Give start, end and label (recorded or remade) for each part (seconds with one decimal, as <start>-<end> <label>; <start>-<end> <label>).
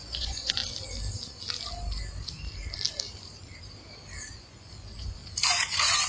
0.0-0.6 remade; 0.6-4.3 recorded; 4.3-5.2 remade; 5.2-6.1 recorded